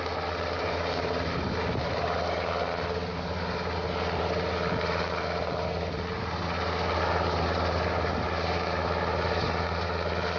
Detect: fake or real real